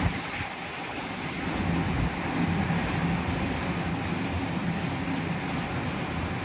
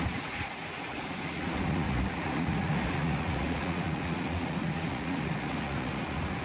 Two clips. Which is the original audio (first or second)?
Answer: first